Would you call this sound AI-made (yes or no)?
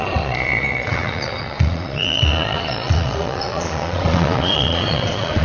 yes